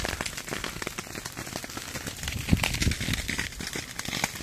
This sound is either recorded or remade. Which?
recorded